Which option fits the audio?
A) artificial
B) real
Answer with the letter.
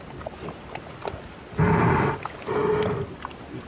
B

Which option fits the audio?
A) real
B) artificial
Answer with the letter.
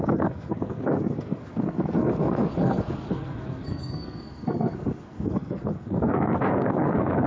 B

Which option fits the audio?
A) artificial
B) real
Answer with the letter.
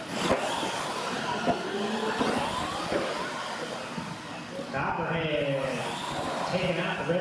B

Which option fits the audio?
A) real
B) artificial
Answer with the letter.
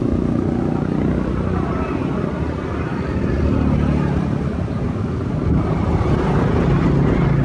A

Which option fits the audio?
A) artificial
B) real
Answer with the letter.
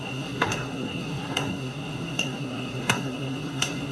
A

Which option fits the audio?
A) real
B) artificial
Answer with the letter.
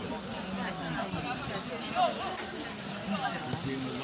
A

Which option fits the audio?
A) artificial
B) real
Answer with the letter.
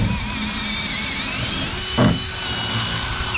B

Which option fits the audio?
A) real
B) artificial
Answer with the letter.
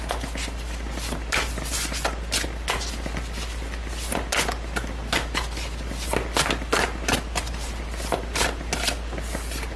A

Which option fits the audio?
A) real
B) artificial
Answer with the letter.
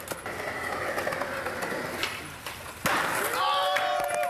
A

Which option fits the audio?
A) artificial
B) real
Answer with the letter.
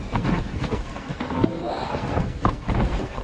A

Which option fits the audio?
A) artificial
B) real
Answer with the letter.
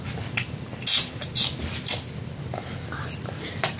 B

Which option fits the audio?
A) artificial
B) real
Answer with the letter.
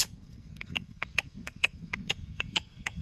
A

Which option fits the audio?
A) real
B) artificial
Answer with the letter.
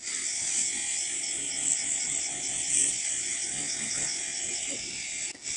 A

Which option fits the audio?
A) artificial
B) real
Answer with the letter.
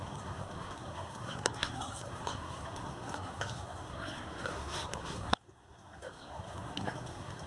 A